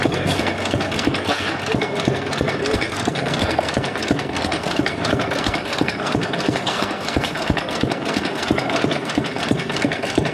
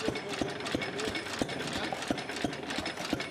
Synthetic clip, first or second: first